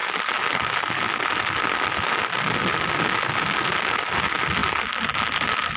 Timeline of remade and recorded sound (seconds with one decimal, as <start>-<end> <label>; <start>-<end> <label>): 0.0-5.8 recorded